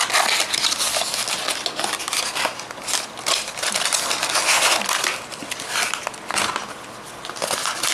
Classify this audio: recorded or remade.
recorded